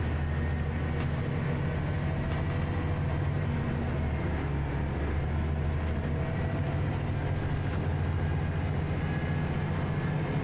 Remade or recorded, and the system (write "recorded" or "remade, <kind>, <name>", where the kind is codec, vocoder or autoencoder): recorded